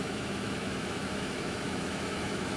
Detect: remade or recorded remade